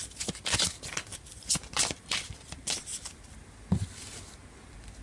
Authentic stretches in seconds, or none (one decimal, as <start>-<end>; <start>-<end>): 0.0-1.1; 2.8-5.0